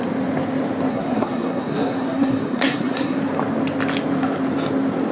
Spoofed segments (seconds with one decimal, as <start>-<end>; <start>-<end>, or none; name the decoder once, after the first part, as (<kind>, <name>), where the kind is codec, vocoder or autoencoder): 0.9-3.2 (codec, SNAC)